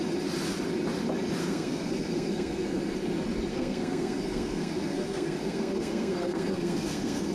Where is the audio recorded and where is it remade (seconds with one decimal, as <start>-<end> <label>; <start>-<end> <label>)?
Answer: 0.0-1.4 recorded; 1.4-2.8 remade; 2.8-3.5 recorded; 3.5-7.3 remade